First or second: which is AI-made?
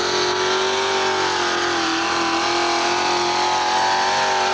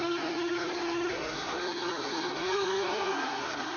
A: second